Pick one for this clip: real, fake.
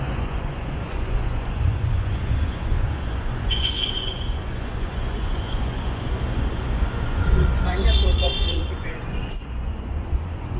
fake